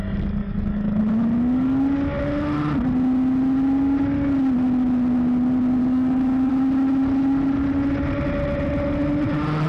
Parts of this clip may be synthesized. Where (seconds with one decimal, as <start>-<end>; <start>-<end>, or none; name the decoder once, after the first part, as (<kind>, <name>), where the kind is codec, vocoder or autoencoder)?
0.4-1.0 (codec, DAC); 5.8-6.5